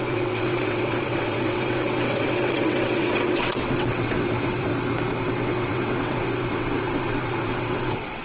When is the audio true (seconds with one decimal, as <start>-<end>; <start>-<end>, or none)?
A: 4.7-5.2